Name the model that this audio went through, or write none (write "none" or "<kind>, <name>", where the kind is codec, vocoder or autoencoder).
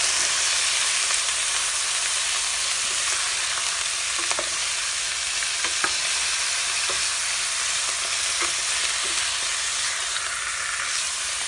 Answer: none